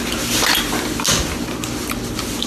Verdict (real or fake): real